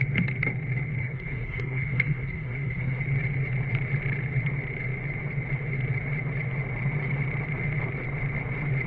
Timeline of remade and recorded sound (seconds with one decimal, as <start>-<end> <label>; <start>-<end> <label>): 0.0-1.0 recorded; 1.0-3.0 remade; 3.0-8.9 recorded